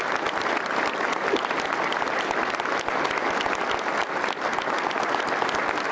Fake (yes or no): no